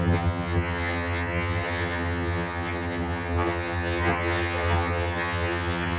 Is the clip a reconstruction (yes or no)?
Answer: yes